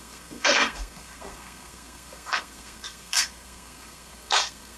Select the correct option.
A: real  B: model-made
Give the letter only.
B